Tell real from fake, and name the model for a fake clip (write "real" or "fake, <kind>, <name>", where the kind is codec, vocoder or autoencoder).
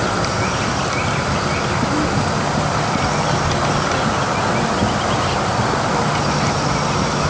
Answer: real